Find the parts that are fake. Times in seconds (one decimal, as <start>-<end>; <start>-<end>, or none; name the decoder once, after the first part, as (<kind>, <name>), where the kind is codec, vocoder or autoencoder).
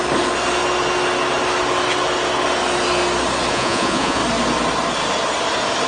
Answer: 3.5-4.2 (vocoder, Vocos)